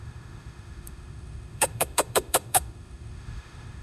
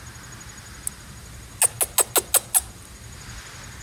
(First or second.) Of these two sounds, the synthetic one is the first